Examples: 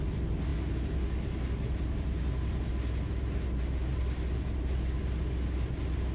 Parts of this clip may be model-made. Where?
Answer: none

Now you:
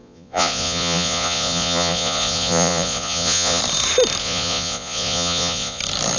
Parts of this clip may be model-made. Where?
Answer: 0.0-3.6 (vocoder, Vocos); 4.2-5.8

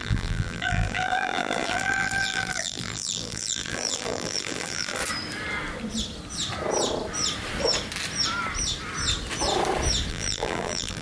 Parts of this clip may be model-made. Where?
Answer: 0.0-5.0 (vocoder, BigVGAN v2); 10.1-11.0